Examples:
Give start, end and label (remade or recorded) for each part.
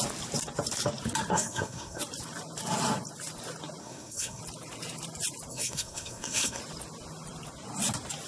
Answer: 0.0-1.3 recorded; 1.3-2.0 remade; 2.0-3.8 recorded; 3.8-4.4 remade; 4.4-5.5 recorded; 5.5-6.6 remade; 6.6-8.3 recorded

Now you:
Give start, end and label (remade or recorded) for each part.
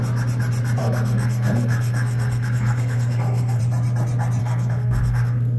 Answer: 0.0-0.8 recorded; 0.8-3.6 remade; 3.6-4.4 recorded; 4.4-5.6 remade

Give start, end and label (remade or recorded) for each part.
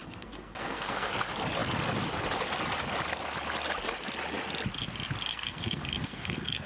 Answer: 0.0-1.1 remade; 1.1-5.3 recorded; 5.3-6.7 remade